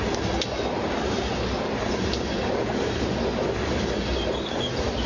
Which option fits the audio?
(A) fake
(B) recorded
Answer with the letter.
B